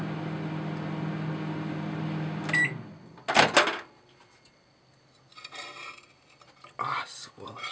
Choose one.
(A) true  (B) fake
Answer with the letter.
A